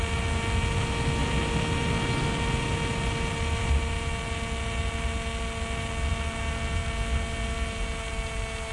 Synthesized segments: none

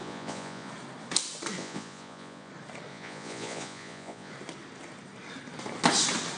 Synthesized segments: 0.0-0.7 (vocoder, Vocos); 1.6-2.5; 2.9-4.3

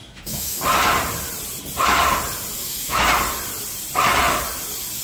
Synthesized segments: 0.0-0.6 (autoencoder, DAC-VAE); 2.6-3.1